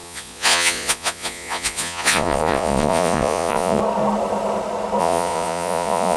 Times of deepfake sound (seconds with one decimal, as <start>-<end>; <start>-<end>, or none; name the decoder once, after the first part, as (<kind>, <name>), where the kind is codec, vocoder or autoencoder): 0.0-3.8 (vocoder, Vocos); 5.0-6.2